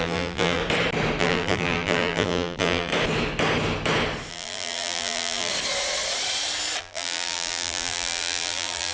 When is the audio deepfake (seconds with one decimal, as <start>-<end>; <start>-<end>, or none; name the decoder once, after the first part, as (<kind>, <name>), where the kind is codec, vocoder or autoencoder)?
0.0-0.6 (vocoder, BigVGAN v2); 1.2-2.9; 4.3-5.5; 6.8-8.9